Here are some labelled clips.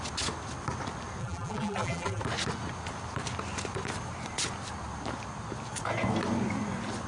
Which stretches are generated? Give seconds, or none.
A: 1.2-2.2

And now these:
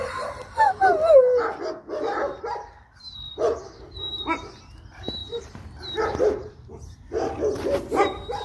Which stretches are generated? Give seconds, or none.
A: 5.2-5.8

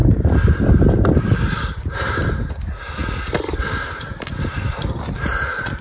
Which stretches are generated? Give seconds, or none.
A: 0.0-3.0; 3.9-5.8

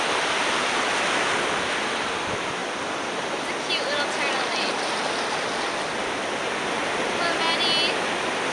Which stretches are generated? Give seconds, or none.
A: none

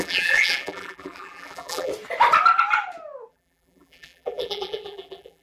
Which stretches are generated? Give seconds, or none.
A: 0.0-1.9; 3.3-5.4

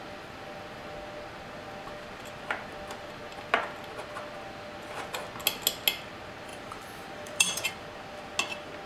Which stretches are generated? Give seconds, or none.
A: 6.5-7.7